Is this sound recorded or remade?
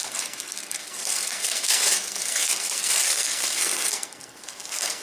remade